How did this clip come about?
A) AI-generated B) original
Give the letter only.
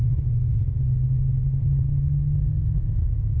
B